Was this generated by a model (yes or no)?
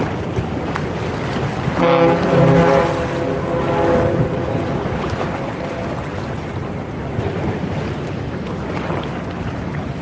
no